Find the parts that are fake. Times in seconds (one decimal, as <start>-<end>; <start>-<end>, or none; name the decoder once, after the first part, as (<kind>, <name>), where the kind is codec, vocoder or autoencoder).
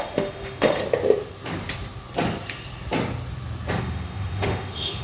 0.0-0.8 (autoencoder, DAC-VAE); 3.8-5.0